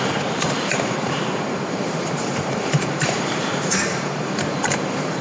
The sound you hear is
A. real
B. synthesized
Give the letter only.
B